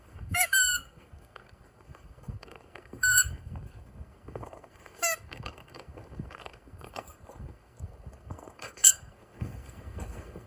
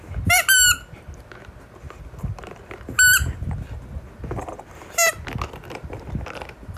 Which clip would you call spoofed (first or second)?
first